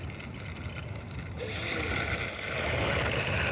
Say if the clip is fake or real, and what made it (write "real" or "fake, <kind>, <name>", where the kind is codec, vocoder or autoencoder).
real